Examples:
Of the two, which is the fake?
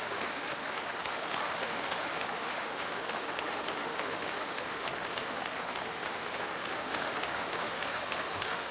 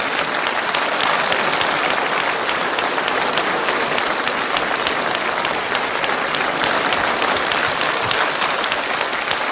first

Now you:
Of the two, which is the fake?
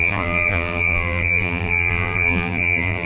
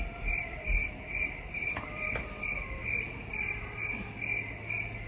first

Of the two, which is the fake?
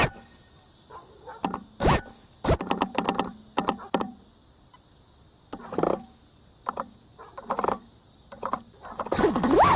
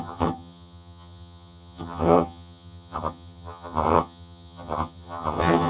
second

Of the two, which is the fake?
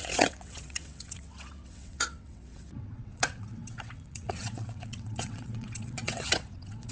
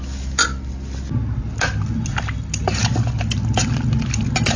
first